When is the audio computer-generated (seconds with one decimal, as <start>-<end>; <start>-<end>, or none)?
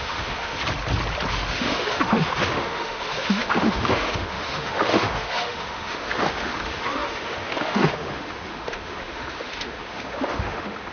0.0-0.6; 1.3-10.9